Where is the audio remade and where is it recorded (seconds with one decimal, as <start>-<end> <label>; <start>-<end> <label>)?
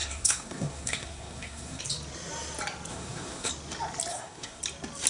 0.0-1.8 remade; 1.8-2.9 recorded; 2.9-3.5 remade; 3.5-4.1 recorded; 4.1-4.6 remade; 4.6-5.1 recorded